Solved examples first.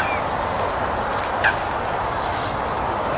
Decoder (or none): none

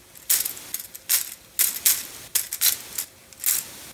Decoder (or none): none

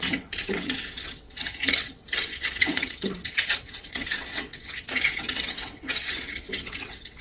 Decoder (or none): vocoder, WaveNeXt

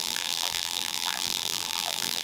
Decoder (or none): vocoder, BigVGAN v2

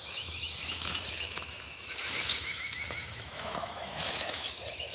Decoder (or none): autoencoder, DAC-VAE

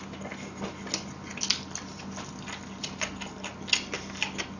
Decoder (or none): none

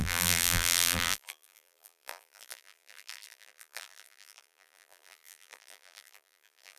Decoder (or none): vocoder, BigVGAN v2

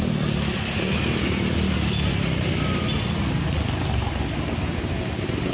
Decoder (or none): none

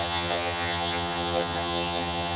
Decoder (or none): vocoder, HiFi-GAN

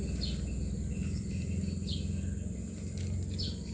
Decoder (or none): none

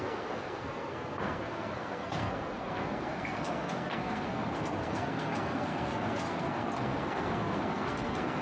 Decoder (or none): codec, SNAC